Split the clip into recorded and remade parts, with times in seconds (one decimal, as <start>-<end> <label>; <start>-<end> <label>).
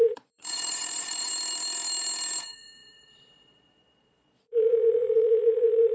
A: 0.0-1.3 remade; 1.3-2.4 recorded; 2.4-5.9 remade